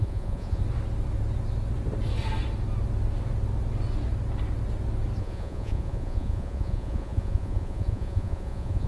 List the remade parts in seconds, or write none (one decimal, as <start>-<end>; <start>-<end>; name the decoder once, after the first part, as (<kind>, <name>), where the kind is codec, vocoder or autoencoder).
0.0-0.6 (vocoder, Vocos); 5.2-8.9